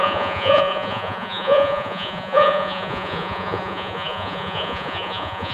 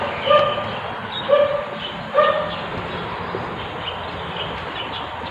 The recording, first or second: second